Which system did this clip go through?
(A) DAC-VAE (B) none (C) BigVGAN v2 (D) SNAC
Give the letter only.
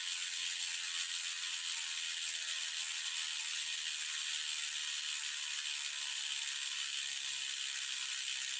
B